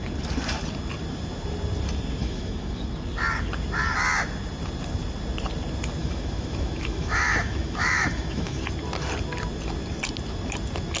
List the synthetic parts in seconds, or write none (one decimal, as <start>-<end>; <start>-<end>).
2.2-2.8; 6.0-8.6